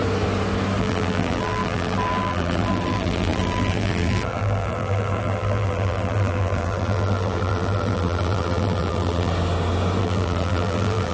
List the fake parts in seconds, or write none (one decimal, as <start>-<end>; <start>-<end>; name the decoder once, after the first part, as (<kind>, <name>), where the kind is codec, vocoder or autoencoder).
0.8-9.3 (vocoder, BigVGAN v2); 10.0-11.1